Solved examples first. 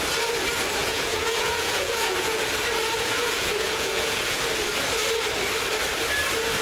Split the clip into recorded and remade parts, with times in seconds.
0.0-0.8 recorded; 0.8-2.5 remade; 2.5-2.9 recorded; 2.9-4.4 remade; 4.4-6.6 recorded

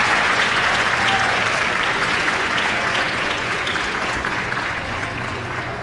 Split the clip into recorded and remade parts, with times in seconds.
0.0-1.4 remade; 1.4-1.9 recorded; 1.9-5.8 remade

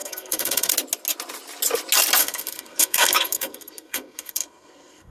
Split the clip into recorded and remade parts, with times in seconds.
0.0-0.7 remade; 0.7-2.2 recorded; 2.2-5.1 remade

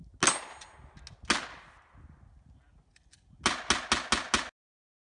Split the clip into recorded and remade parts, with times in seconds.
0.0-5.0 recorded